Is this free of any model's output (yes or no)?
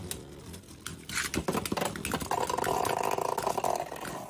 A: yes